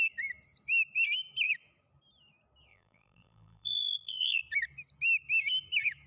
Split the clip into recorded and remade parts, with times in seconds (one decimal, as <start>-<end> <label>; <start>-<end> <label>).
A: 0.0-2.7 recorded; 2.7-4.4 remade; 4.4-6.1 recorded